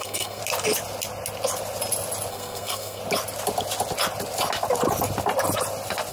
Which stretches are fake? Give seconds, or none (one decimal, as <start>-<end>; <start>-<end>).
0.0-0.4; 2.3-3.0